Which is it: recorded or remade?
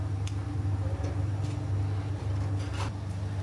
recorded